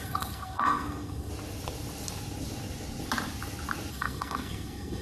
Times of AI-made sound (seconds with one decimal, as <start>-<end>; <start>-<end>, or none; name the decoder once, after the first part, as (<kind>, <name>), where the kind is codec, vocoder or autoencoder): 0.0-1.3 (codec, SNAC); 3.9-5.0

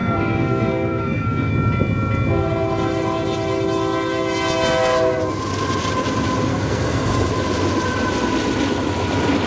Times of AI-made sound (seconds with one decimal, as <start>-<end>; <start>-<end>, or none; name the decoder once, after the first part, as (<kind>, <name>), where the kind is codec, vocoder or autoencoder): 0.0-1.5 (codec, SNAC); 6.5-7.3

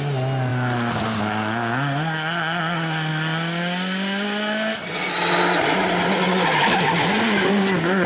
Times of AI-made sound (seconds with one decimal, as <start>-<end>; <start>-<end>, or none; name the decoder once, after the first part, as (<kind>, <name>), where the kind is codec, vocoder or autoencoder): none

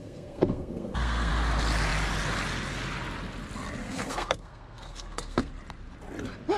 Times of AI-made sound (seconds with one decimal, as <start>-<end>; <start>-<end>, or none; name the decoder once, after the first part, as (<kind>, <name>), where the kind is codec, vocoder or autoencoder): 0.0-1.3 (codec, SNAC); 3.8-5.5

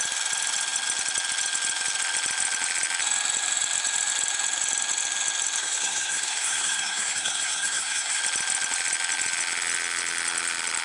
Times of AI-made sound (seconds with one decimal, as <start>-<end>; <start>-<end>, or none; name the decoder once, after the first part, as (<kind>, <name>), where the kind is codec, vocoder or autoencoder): 5.6-8.2 (codec, SNAC)

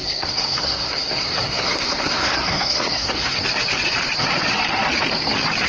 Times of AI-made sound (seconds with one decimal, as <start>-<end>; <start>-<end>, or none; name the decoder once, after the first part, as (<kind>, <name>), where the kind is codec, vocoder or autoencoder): 0.0-3.4 (codec, SNAC)

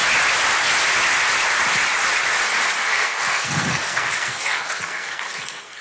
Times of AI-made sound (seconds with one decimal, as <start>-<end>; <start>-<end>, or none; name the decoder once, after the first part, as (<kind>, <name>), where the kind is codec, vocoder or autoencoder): 2.8-5.8 (codec, SNAC)

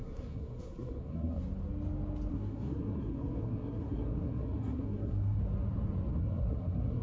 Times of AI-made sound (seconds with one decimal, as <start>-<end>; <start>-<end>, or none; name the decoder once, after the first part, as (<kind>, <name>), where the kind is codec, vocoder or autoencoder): 0.0-1.4 (codec, SNAC); 2.3-5.4; 6.1-7.0